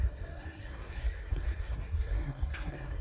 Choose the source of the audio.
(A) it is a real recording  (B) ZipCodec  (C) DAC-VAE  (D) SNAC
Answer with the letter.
D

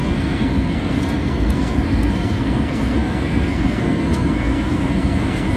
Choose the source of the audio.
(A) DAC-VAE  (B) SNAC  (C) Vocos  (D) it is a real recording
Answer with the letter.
B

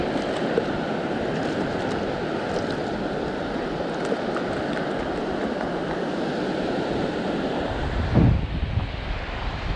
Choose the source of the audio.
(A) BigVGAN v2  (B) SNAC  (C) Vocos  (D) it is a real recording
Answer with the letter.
D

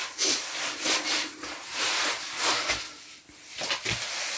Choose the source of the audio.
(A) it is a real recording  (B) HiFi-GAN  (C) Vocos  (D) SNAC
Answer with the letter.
A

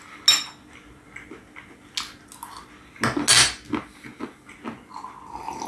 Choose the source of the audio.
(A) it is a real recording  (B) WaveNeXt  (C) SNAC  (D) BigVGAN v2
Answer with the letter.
A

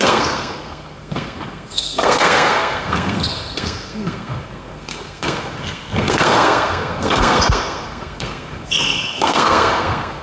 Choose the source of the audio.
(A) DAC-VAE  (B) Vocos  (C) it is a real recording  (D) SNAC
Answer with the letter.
D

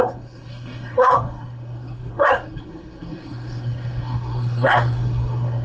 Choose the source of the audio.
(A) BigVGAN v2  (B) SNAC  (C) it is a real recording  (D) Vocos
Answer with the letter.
B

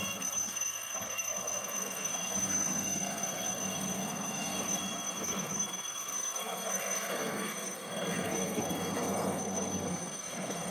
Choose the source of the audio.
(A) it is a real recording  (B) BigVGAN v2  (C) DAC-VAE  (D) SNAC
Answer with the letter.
D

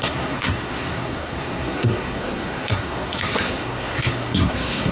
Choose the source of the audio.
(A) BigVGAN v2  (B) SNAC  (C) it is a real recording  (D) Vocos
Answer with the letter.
B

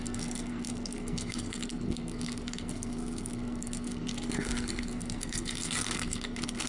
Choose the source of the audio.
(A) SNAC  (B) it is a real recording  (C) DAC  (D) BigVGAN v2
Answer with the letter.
A